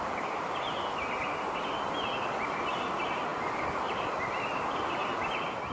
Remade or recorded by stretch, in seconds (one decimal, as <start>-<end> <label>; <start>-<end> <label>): 0.0-5.7 recorded

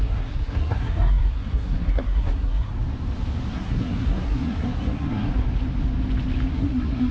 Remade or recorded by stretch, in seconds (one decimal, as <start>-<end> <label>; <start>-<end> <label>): 0.0-2.7 remade; 2.7-3.5 recorded; 3.5-5.3 remade; 5.3-6.5 recorded; 6.5-7.1 remade

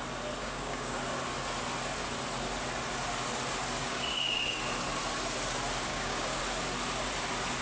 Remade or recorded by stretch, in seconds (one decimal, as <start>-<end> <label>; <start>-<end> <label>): 0.0-0.4 recorded; 0.4-1.0 remade; 1.0-3.8 recorded; 3.8-4.6 remade; 4.6-5.9 recorded; 5.9-6.4 remade; 6.4-7.6 recorded